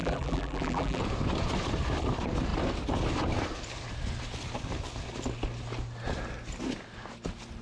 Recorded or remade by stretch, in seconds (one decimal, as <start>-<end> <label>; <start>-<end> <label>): 0.0-1.0 remade; 1.0-7.6 recorded